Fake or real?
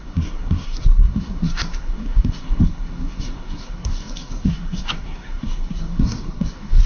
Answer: fake